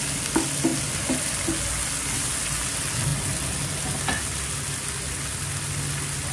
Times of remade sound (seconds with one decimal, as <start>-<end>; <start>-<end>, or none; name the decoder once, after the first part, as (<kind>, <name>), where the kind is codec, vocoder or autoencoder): none